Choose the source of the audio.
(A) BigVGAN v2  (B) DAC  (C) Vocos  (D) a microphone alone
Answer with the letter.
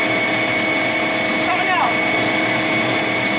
D